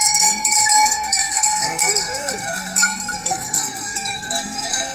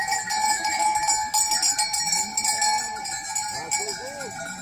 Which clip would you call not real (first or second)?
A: first